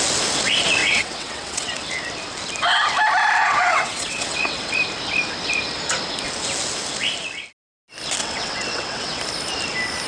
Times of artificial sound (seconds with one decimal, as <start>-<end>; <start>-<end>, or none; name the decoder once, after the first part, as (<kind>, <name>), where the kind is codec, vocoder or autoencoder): 0.8-1.8 (vocoder, WaveNeXt); 3.4-4.7; 8.2-9.2

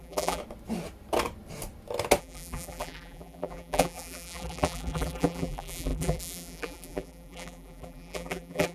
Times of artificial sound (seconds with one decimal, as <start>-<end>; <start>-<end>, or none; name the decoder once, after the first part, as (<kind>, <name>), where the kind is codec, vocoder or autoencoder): 0.0-0.4 (vocoder, BigVGAN v2); 2.2-8.7

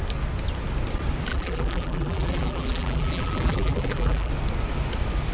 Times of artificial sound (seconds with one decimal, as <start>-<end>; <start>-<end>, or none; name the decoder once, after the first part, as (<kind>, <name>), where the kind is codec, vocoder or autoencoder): 1.3-4.3 (vocoder, BigVGAN v2)

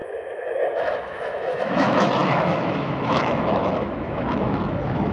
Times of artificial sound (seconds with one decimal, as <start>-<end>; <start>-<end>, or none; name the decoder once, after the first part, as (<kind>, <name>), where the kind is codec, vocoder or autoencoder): 0.0-5.1 (autoencoder, DAC-VAE)